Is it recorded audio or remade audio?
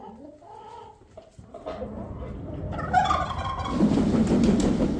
recorded